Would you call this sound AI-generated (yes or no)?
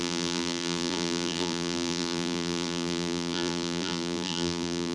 yes